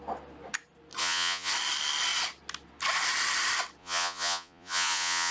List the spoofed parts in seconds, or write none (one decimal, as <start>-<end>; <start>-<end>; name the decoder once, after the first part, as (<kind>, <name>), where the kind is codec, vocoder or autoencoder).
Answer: 1.0-1.5 (vocoder, Vocos); 3.8-5.3